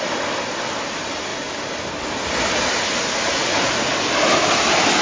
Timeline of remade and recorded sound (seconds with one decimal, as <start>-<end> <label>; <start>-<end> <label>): 0.0-5.0 recorded